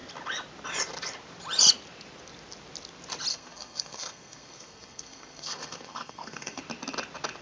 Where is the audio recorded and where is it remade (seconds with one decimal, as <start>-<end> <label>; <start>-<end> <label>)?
0.0-3.3 recorded; 3.3-6.6 remade; 6.6-7.4 recorded

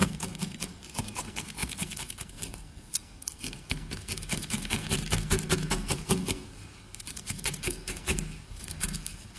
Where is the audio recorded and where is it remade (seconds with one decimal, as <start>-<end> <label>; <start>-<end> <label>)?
0.0-9.4 remade

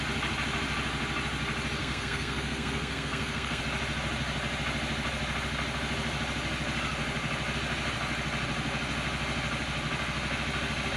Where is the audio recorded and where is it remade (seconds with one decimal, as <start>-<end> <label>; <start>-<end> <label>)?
0.0-1.8 recorded; 1.8-3.6 remade; 3.6-11.0 recorded

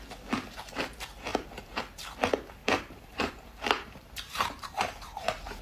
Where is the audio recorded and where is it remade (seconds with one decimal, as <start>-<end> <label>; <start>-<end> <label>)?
0.0-1.3 recorded; 1.3-1.8 remade; 1.8-2.6 recorded; 2.6-5.6 remade